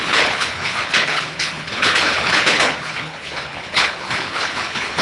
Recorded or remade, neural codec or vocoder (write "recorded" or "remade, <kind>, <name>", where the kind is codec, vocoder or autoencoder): remade, codec, HILCodec